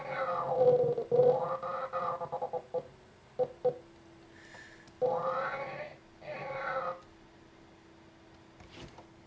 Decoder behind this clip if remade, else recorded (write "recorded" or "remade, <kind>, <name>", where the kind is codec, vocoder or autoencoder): recorded